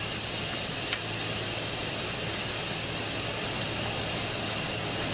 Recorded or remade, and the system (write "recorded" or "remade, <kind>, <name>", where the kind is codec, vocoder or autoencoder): recorded